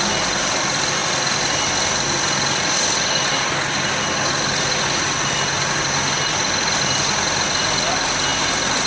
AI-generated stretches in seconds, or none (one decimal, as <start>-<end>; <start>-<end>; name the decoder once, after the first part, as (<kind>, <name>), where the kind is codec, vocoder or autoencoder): none